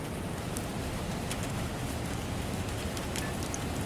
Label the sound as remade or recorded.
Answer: recorded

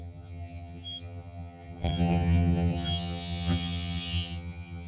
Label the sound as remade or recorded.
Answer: remade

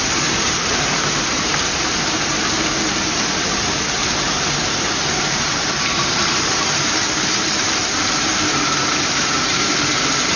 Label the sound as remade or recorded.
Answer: remade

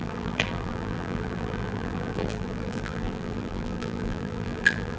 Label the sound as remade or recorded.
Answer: remade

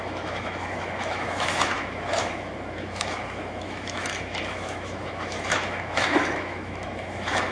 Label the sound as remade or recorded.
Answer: remade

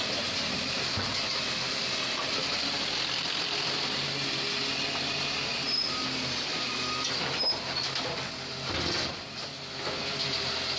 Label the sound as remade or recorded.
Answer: recorded